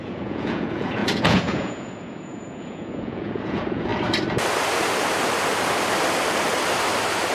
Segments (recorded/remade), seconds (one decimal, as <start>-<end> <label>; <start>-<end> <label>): 0.0-3.9 remade; 3.9-7.3 recorded